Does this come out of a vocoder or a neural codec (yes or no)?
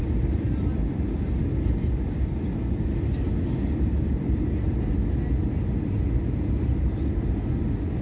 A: no